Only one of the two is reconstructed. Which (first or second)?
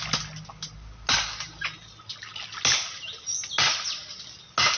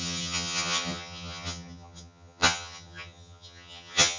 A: second